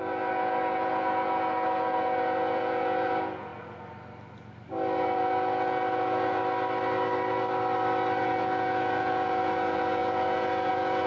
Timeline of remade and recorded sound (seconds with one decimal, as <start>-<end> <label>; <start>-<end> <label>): 0.0-3.5 remade; 3.5-5.0 recorded; 5.0-6.4 remade; 6.4-8.2 recorded; 8.2-11.1 remade